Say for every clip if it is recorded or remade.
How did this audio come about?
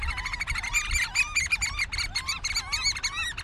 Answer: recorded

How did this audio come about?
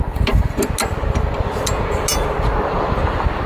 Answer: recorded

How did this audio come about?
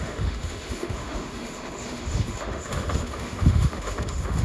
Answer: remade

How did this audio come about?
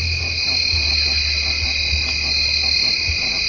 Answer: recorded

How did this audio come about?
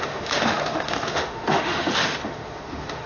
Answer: remade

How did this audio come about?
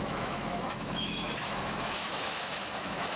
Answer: remade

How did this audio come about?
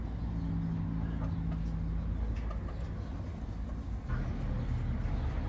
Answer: recorded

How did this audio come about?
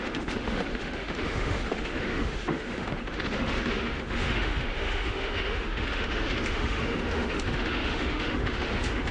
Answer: remade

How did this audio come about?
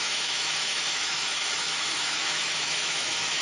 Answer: remade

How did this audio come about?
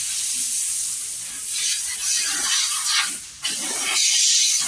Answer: recorded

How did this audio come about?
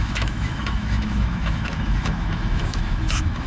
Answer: remade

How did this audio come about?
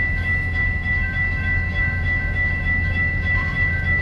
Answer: remade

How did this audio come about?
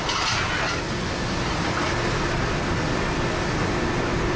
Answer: recorded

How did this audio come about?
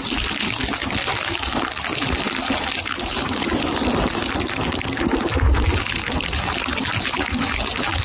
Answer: recorded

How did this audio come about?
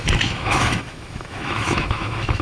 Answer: remade